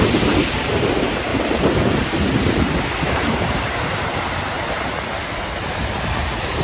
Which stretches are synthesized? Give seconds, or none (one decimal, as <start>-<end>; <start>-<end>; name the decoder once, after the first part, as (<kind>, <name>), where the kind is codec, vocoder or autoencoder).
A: none